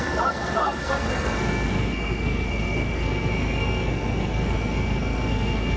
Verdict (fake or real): fake